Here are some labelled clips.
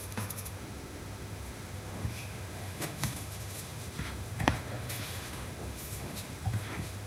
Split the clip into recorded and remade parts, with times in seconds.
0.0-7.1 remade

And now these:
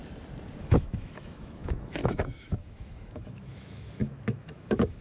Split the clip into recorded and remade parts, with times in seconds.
0.0-0.6 recorded; 0.6-5.0 remade

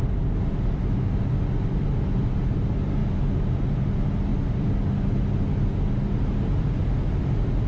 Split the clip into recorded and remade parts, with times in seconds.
0.0-7.7 recorded

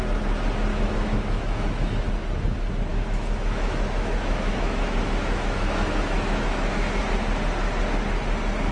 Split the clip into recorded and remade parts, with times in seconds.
0.0-0.7 recorded; 0.7-2.0 remade; 2.0-2.9 recorded; 2.9-7.0 remade; 7.0-8.7 recorded

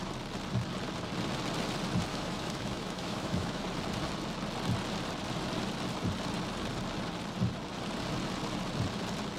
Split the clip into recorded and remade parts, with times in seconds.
0.0-2.1 recorded; 2.1-3.6 remade; 3.6-9.4 recorded

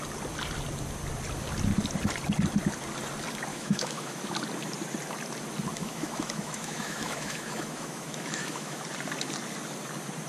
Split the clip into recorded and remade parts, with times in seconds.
0.0-3.5 recorded; 3.5-4.3 remade; 4.3-5.7 recorded; 5.7-8.8 remade; 8.8-10.3 recorded

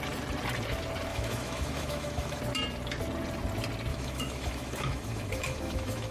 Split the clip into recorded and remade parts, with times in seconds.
0.0-1.1 recorded; 1.1-2.4 remade; 2.4-3.9 recorded; 3.9-6.1 remade